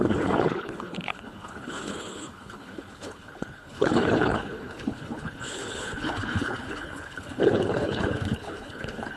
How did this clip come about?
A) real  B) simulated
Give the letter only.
B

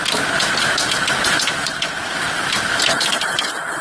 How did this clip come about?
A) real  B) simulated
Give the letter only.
A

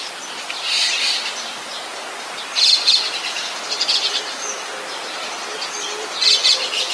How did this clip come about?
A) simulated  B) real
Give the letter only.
B